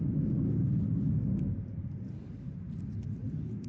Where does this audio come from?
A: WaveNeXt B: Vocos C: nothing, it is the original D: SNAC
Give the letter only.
C